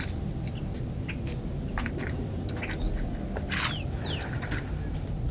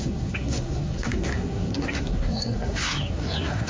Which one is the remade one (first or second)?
second